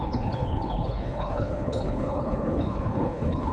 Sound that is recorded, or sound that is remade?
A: remade